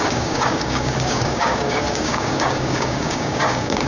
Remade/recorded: remade